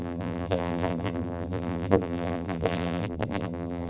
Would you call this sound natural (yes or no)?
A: no